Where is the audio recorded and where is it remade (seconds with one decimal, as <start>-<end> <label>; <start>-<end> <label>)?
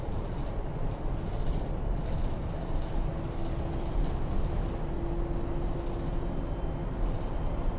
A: 0.0-0.4 remade; 0.4-2.6 recorded; 2.6-3.1 remade; 3.1-7.8 recorded